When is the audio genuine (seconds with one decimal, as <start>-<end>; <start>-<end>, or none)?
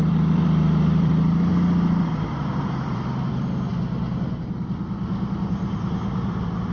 1.5-2.3; 3.7-5.5